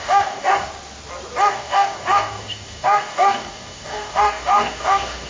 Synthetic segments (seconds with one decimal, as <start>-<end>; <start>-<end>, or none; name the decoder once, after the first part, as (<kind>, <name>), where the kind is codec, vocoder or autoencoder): 0.0-0.7 (codec, DAC); 1.5-5.3